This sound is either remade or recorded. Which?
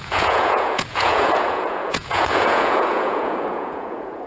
remade